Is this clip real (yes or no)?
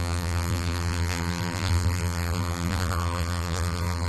no